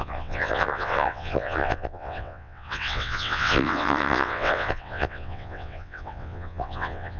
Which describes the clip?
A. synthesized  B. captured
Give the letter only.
A